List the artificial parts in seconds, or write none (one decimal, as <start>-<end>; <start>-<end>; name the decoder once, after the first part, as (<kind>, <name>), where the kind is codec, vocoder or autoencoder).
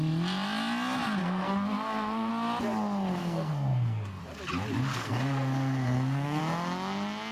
1.2-2.3 (codec, SNAC); 3.2-4.2; 4.9-6.4